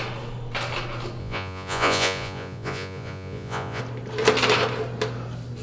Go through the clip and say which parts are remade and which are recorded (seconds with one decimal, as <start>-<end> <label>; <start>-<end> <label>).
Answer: 0.0-1.2 recorded; 1.2-3.8 remade; 3.8-5.6 recorded

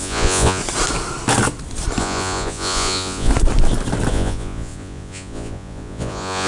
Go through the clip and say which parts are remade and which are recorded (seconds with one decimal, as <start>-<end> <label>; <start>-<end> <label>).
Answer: 0.0-0.6 remade; 0.6-2.0 recorded; 2.0-3.3 remade; 3.3-4.1 recorded; 4.1-6.5 remade

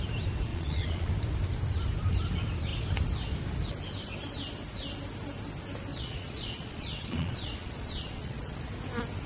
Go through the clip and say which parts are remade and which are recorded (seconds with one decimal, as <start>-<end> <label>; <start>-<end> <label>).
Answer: 0.0-0.5 recorded; 0.5-1.1 remade; 1.1-5.9 recorded; 5.9-8.7 remade; 8.7-9.3 recorded

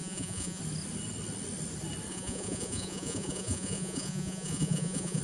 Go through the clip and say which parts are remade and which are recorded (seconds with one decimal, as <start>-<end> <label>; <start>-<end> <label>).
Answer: 0.0-0.6 remade; 0.6-2.1 recorded; 2.1-5.2 remade

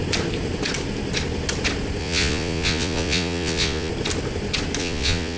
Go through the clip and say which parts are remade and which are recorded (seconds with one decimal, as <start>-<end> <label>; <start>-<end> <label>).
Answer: 0.0-2.0 recorded; 2.0-3.9 remade; 3.9-4.8 recorded; 4.8-5.4 remade

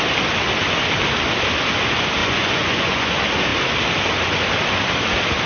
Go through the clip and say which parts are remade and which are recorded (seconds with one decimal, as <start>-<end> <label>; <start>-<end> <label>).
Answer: 0.0-2.2 recorded; 2.2-3.1 remade; 3.1-5.5 recorded

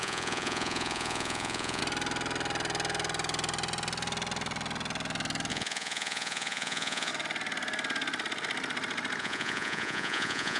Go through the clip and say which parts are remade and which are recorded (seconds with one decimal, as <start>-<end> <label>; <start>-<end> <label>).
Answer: 0.0-1.8 remade; 1.8-5.5 recorded; 5.5-7.1 remade; 7.1-9.2 recorded; 9.2-10.6 remade